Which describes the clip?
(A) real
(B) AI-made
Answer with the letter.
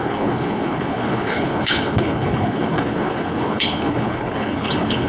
B